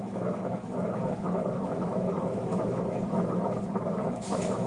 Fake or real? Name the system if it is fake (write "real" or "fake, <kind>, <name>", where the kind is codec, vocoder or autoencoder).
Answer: fake, autoencoder, DAC-VAE